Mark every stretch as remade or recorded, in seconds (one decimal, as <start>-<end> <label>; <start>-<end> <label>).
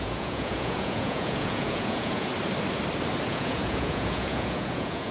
0.0-2.3 remade; 2.3-3.3 recorded; 3.3-5.1 remade